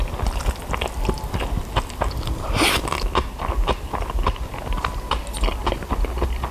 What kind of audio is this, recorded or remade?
recorded